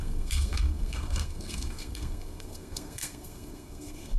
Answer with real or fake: fake